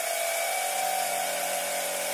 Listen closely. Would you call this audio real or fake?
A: real